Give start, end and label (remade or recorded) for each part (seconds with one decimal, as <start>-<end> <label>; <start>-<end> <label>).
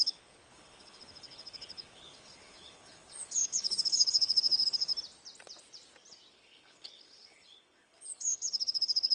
0.0-4.9 remade; 4.9-6.3 recorded; 6.3-9.1 remade